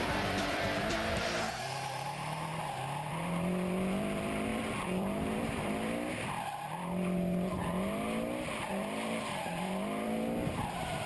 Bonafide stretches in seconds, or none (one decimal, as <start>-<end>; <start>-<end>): 2.5-3.1; 7.6-8.6